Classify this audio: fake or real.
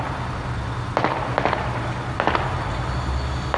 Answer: real